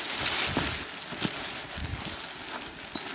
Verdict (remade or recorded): recorded